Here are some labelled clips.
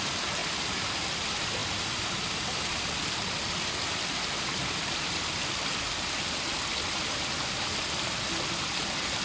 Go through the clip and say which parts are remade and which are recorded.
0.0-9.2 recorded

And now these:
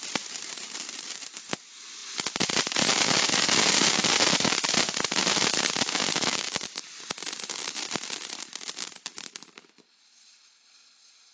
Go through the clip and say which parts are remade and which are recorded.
0.0-6.3 recorded; 6.3-6.8 remade; 6.8-11.3 recorded